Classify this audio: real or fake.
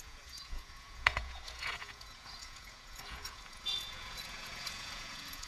fake